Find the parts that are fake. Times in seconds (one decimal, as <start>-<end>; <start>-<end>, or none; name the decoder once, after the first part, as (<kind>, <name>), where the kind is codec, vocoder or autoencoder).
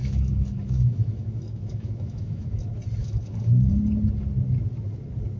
0.0-2.6 (autoencoder, DAC-VAE); 3.0-3.7